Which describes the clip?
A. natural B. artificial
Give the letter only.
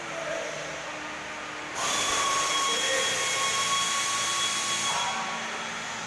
A